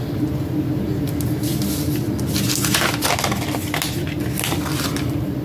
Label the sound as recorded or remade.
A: recorded